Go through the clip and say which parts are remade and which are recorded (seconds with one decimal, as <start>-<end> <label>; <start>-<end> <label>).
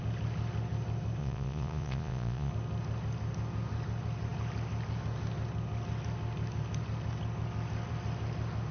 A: 0.0-1.2 recorded; 1.2-2.5 remade; 2.5-8.7 recorded